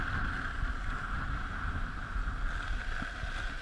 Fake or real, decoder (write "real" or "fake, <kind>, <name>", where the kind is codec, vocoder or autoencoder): real